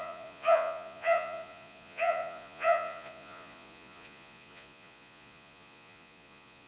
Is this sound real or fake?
fake